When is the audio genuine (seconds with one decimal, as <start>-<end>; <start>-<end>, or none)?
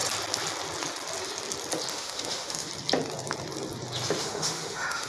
0.0-1.9; 2.7-4.2